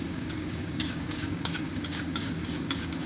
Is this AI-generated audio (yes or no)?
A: yes